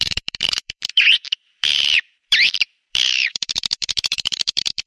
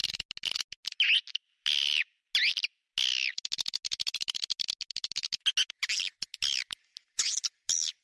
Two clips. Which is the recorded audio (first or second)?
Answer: second